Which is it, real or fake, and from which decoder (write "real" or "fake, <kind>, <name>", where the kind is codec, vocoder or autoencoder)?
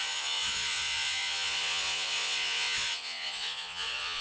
fake, vocoder, Vocos